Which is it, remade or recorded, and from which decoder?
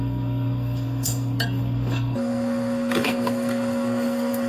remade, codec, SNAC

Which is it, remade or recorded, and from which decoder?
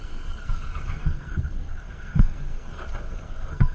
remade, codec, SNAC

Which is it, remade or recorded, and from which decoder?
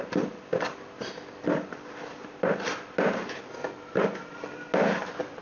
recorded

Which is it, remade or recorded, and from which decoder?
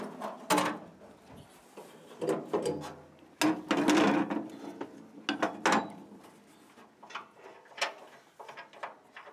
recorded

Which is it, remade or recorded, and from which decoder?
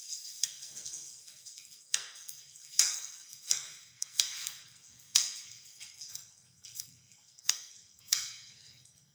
remade, codec, SNAC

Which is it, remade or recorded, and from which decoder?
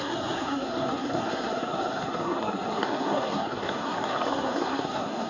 remade, codec, SNAC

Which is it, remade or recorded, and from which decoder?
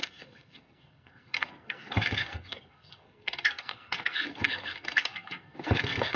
remade, codec, SNAC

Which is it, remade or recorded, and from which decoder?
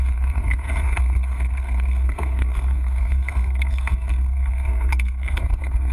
remade, codec, SNAC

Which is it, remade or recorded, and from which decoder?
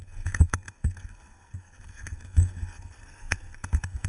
remade, codec, SNAC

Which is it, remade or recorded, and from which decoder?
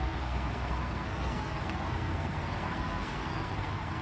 remade, codec, SNAC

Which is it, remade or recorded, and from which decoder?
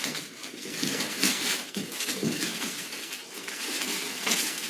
remade, codec, SNAC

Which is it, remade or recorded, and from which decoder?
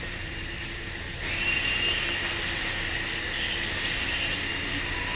recorded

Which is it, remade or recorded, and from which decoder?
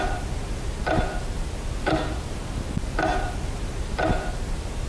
recorded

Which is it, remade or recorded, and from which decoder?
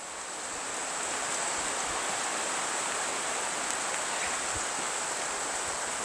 recorded